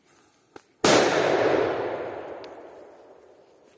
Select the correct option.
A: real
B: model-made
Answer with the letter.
A